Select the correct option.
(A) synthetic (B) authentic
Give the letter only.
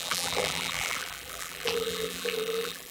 A